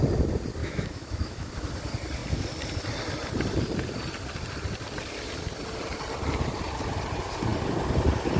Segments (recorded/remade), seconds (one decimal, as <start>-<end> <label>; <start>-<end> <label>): 0.0-0.6 recorded; 0.6-1.5 remade; 1.5-8.4 recorded